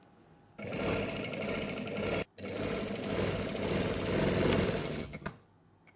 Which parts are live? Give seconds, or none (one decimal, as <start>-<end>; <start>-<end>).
0.0-4.8; 5.3-6.0